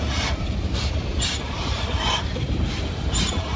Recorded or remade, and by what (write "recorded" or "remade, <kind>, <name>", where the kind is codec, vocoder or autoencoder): remade, vocoder, BigVGAN v2